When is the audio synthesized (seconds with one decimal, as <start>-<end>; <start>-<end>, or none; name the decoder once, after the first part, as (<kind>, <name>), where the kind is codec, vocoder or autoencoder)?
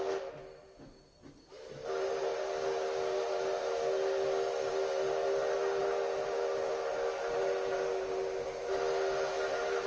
none